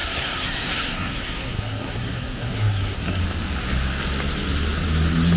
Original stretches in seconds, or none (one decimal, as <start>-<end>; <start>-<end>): 3.2-5.4